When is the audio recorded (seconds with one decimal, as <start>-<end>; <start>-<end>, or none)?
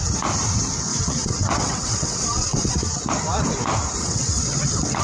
0.0-0.9; 2.9-4.0